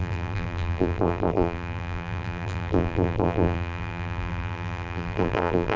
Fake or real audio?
fake